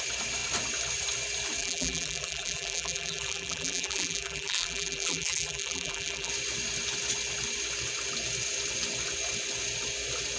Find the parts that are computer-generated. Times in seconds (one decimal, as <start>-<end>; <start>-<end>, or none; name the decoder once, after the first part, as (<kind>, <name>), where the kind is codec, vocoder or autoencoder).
1.6-6.3 (vocoder, BigVGAN v2)